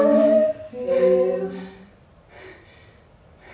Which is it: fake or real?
real